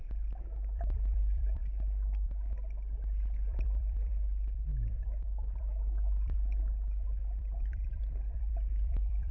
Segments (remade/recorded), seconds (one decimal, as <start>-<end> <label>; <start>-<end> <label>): 0.0-1.6 remade; 1.6-3.5 recorded; 3.5-9.3 remade